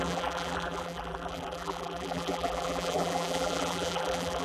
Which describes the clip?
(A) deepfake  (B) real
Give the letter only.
A